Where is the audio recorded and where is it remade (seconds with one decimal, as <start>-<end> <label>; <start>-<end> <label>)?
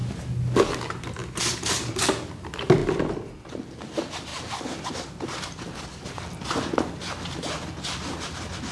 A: 0.0-1.2 recorded; 1.2-1.9 remade; 1.9-4.3 recorded; 4.3-4.9 remade; 4.9-8.7 recorded